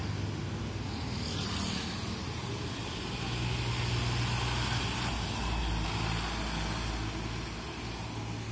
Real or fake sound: real